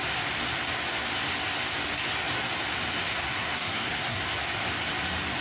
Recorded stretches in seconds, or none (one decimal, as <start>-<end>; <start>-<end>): 0.0-3.1; 4.2-5.4